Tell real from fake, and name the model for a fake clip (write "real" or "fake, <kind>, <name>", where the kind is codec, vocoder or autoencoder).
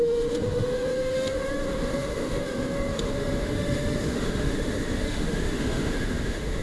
fake, autoencoder, DAC-VAE